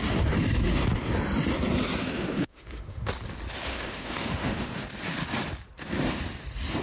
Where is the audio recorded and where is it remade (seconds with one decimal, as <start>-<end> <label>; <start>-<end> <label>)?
0.0-2.0 recorded; 2.0-3.1 remade; 3.1-3.7 recorded; 3.7-4.8 remade; 4.8-6.8 recorded